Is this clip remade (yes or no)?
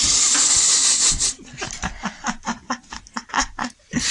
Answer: no